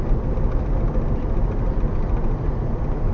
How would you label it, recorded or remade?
recorded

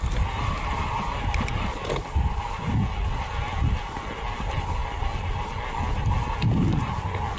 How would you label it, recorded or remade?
recorded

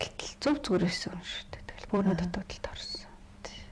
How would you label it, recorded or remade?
remade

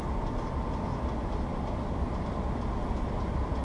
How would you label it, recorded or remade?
recorded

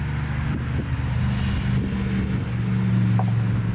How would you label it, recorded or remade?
recorded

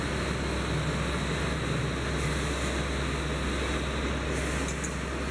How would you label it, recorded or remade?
recorded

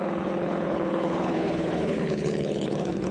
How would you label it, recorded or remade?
remade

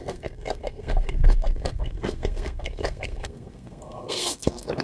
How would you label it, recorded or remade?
remade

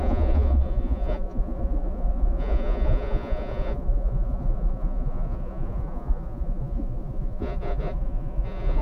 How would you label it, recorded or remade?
remade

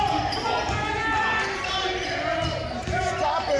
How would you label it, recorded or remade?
recorded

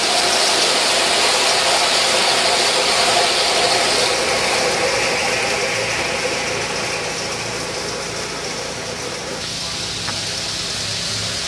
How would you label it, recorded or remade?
recorded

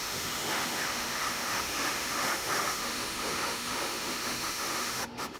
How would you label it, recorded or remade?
remade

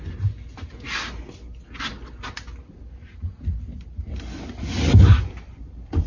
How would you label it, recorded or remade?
recorded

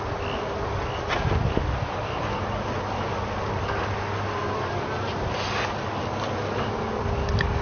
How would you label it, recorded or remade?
recorded